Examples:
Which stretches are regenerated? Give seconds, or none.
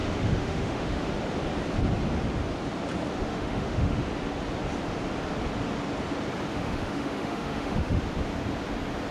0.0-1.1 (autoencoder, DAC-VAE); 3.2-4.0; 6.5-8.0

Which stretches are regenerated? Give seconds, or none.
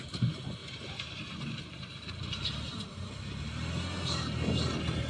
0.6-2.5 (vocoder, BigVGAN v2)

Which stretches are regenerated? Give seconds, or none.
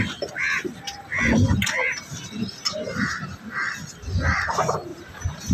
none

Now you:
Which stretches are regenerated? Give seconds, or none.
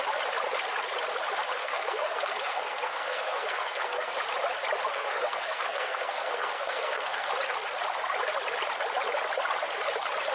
1.6-4.1 (codec, SNAC); 4.9-7.3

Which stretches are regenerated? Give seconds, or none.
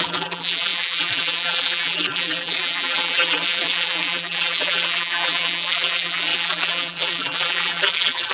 0.0-8.3 (vocoder, BigVGAN v2)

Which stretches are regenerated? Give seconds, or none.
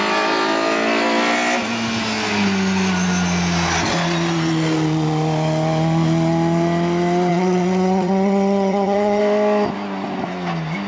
7.3-9.2 (vocoder, HiFi-GAN)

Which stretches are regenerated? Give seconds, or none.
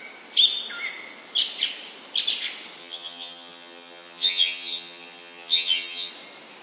2.8-6.1 (vocoder, HiFi-GAN)